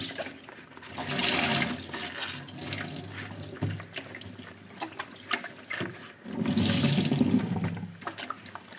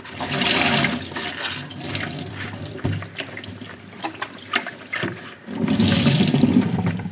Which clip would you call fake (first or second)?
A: second